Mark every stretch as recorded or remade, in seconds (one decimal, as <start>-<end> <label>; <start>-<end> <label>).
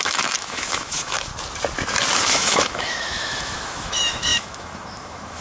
0.0-1.3 remade; 1.3-2.3 recorded; 2.3-5.4 remade